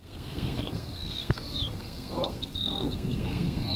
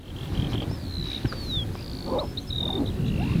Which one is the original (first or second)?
second